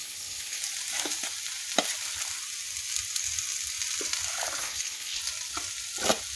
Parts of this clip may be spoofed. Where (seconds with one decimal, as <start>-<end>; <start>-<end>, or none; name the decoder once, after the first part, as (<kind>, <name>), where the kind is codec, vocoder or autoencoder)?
0.0-0.6 (codec, HILCodec); 4.6-5.2